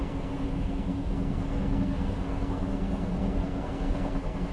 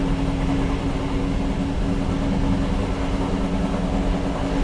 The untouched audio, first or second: second